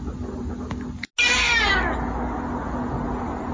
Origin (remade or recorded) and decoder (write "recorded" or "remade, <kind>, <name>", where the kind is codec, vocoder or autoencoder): recorded